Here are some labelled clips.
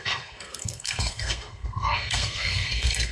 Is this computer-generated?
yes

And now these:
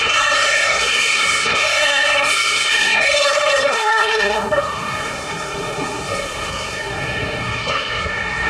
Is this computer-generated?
yes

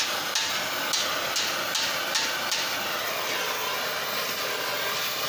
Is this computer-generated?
no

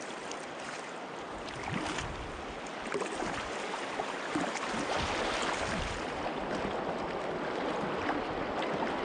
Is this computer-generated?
no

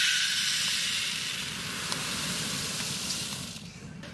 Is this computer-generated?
no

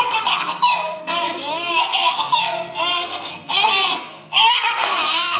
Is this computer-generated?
yes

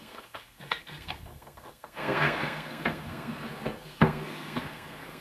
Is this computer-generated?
yes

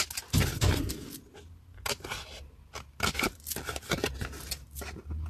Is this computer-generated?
no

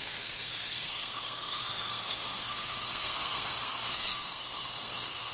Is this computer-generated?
yes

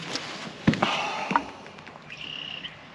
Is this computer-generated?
no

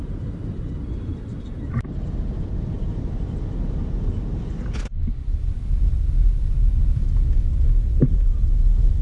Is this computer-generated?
no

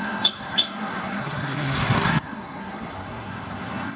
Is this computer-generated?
yes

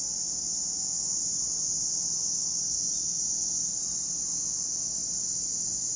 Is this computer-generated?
no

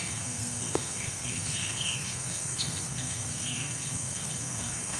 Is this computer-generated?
yes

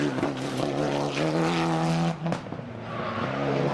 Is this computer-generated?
no